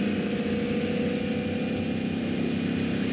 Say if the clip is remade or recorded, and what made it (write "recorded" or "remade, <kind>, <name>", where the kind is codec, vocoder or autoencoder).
recorded